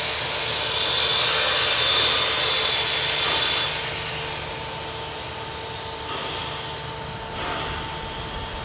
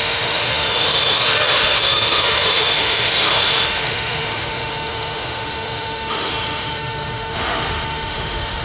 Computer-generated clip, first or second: second